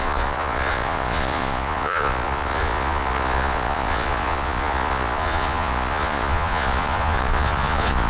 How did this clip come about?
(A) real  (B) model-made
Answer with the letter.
B